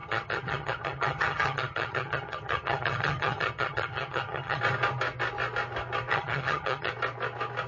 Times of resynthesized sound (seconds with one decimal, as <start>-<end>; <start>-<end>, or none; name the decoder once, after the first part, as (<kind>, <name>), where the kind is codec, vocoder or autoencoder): 0.0-4.6 (vocoder, HiFi-GAN); 6.1-6.9